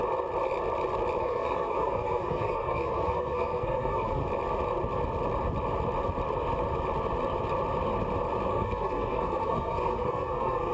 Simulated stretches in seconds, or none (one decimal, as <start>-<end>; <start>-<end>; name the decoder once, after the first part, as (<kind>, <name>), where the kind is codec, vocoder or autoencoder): 1.2-4.2 (codec, SNAC); 8.5-10.7